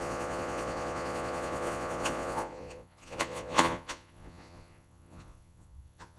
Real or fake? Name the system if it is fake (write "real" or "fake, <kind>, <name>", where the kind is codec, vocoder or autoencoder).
fake, vocoder, Vocos